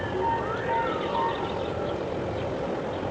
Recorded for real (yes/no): yes